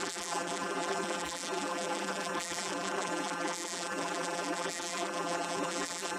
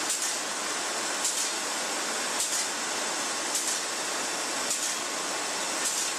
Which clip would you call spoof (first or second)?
first